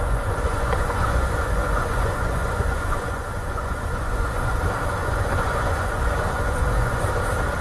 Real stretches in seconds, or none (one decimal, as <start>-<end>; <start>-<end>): 4.6-5.0; 7.1-7.6